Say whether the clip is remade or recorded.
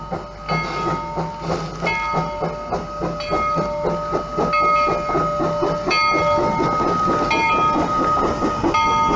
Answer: recorded